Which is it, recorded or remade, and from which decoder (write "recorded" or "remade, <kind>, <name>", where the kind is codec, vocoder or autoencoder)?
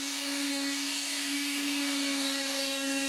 remade, codec, DAC